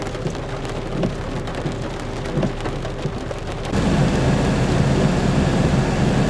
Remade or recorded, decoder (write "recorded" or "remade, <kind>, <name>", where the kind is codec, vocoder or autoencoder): recorded